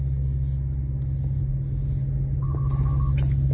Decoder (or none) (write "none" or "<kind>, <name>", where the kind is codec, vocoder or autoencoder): none